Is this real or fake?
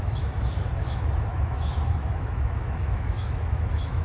fake